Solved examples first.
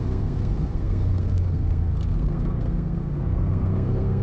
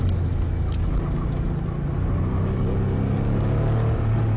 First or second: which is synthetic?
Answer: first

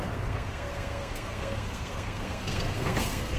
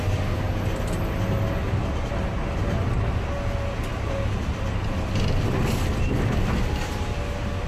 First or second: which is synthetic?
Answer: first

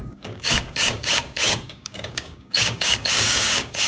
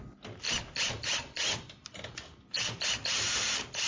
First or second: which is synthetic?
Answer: first